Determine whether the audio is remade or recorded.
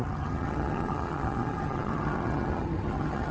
remade